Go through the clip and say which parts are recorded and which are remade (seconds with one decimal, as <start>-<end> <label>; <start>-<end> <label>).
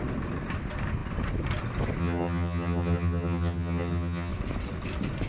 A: 0.0-2.0 recorded; 2.0-4.3 remade; 4.3-5.3 recorded